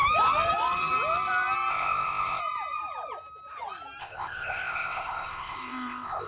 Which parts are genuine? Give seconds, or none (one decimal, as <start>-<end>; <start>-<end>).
0.0-1.7; 2.4-4.0